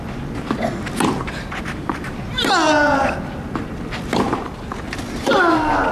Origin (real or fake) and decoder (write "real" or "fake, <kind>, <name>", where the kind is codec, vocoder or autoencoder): real